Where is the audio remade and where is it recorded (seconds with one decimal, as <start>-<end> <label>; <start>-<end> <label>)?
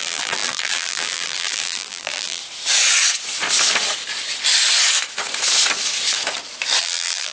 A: 0.0-2.4 remade; 2.4-6.8 recorded; 6.8-7.3 remade